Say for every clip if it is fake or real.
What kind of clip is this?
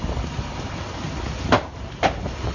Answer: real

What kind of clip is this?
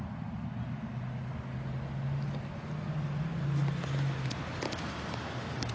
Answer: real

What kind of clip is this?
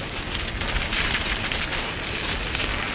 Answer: real